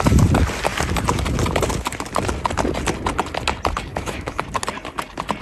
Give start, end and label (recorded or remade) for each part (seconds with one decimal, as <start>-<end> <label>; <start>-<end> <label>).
0.0-3.9 recorded; 3.9-4.4 remade; 4.4-5.4 recorded